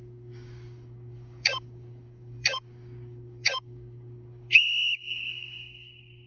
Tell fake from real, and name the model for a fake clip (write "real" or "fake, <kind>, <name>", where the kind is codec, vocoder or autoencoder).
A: fake, codec, DAC